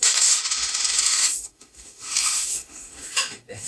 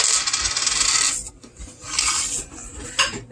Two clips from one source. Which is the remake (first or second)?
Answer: first